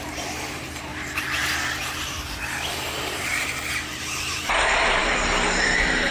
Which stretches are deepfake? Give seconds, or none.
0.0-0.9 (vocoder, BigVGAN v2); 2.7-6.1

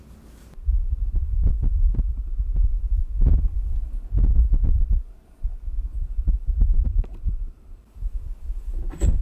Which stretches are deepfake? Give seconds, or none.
1.5-2.4 (vocoder, BigVGAN v2); 5.9-8.2